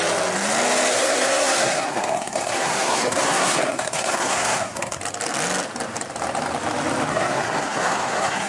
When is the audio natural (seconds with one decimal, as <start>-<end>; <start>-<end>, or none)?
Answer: 0.0-0.9; 5.0-7.1